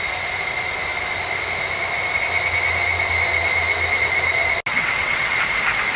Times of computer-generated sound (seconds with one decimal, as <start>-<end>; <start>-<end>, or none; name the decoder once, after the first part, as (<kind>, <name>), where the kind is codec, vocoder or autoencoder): 4.7-5.4 (vocoder, WaveNeXt)